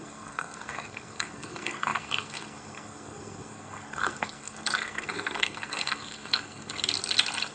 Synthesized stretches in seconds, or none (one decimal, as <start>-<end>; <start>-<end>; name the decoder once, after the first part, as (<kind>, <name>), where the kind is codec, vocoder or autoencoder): 0.0-6.7 (codec, SNAC)